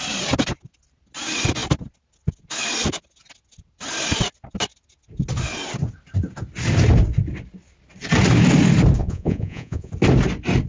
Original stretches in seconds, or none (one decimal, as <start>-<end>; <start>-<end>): 0.0-9.0; 9.9-10.7